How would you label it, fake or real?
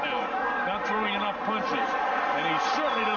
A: real